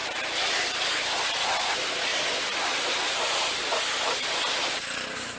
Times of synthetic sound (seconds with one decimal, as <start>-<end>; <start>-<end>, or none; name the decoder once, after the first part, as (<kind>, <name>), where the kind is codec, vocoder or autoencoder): 0.6-5.4 (vocoder, BigVGAN v2)